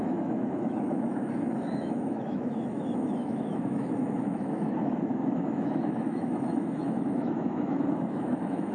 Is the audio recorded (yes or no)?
no